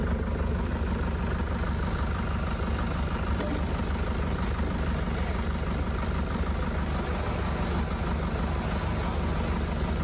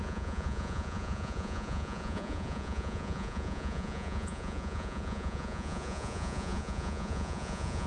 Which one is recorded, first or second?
first